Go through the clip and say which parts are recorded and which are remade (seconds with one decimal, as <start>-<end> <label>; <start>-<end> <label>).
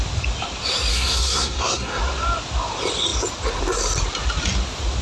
0.0-0.9 recorded; 0.9-2.0 remade; 2.0-5.0 recorded